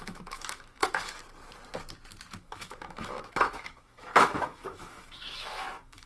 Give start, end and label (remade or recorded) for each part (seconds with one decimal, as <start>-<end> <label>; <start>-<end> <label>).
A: 0.0-1.2 remade; 1.2-2.4 recorded; 2.4-6.1 remade